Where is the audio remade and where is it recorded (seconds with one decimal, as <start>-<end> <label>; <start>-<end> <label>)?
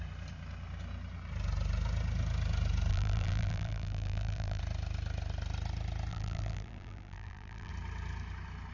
0.0-2.9 recorded; 2.9-4.6 remade; 4.6-6.1 recorded; 6.1-7.7 remade; 7.7-8.7 recorded